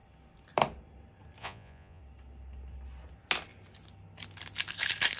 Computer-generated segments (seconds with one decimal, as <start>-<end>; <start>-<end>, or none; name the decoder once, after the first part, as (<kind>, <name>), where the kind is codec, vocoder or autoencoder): 1.4-2.0 (vocoder, Vocos)